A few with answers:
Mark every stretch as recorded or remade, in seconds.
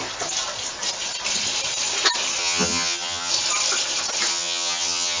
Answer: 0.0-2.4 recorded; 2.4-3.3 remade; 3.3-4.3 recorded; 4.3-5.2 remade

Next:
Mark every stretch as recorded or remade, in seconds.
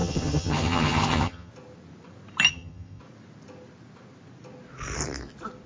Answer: 0.0-1.5 remade; 1.5-2.5 recorded; 2.5-3.0 remade; 3.0-5.7 recorded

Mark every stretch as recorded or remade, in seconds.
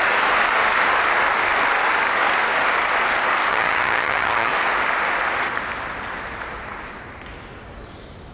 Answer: 0.0-3.5 recorded; 3.5-4.5 remade; 4.5-8.3 recorded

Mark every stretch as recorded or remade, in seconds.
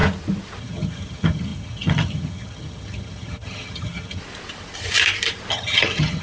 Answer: 0.0-0.6 recorded; 0.6-4.2 remade; 4.2-5.5 recorded; 5.5-6.2 remade